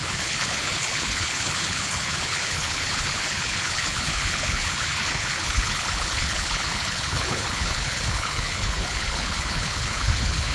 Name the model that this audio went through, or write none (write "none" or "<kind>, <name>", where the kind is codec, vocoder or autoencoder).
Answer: codec, HILCodec